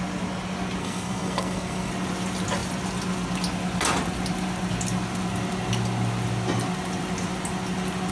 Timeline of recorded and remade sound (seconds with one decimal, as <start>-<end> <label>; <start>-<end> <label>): 0.0-0.8 recorded; 0.8-1.9 remade; 1.9-8.1 recorded

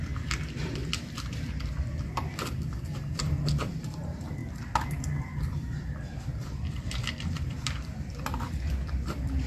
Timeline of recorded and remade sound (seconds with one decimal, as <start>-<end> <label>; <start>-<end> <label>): 0.0-4.4 remade; 4.4-5.2 recorded; 5.2-9.5 remade